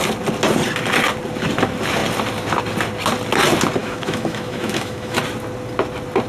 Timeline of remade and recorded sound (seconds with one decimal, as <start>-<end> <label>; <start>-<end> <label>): 0.0-3.8 recorded; 3.8-5.2 remade; 5.2-6.3 recorded